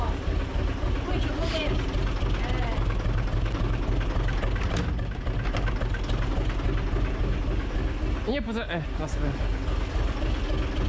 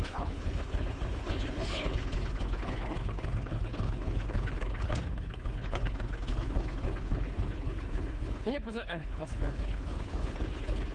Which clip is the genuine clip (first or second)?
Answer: first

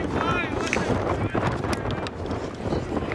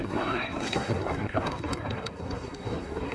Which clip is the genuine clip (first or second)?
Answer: first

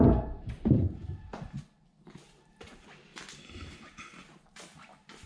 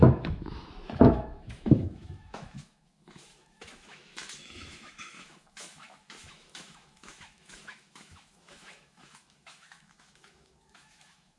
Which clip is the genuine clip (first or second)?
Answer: first